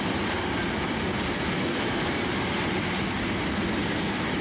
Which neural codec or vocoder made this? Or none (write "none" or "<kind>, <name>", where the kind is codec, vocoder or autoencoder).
none